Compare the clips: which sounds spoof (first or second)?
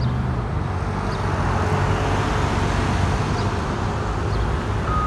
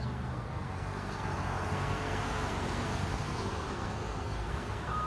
second